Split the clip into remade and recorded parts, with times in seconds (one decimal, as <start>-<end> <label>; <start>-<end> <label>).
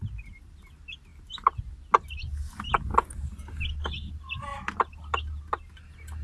0.0-1.1 recorded; 1.1-1.6 remade; 1.6-4.5 recorded; 4.5-5.4 remade; 5.4-6.2 recorded